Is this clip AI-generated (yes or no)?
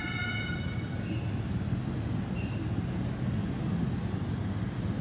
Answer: no